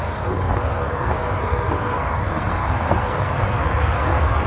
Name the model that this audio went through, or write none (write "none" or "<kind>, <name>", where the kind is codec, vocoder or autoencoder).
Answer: codec, SNAC